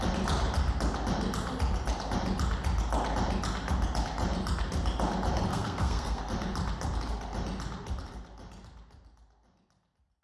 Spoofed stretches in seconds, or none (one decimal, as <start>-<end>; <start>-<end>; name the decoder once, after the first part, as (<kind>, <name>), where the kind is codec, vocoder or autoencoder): 5.5-6.2 (codec, SNAC)